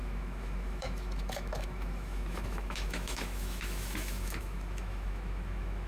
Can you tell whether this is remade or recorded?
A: remade